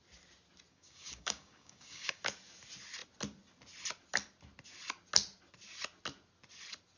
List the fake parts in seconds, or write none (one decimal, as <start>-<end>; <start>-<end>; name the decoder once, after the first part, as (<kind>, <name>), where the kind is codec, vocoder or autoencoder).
0.7-2.2 (codec, DAC)